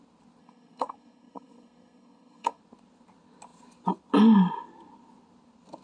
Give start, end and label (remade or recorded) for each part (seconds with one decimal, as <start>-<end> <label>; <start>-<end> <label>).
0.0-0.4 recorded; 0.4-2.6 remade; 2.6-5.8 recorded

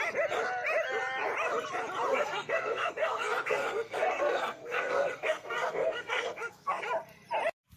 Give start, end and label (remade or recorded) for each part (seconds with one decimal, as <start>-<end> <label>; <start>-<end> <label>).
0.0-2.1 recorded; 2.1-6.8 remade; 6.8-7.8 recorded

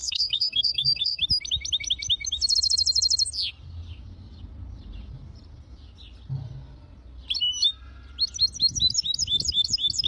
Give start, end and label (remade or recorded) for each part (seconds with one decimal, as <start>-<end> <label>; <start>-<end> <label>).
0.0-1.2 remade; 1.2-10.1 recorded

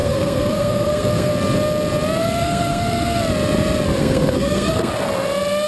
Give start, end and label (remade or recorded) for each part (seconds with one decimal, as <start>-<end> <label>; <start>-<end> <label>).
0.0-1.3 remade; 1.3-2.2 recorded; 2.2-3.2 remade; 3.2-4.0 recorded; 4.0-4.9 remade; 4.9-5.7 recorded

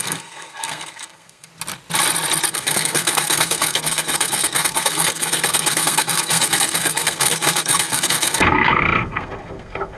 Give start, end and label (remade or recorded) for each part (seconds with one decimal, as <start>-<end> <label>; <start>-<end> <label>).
0.0-1.5 remade; 1.5-2.5 recorded; 2.5-10.0 remade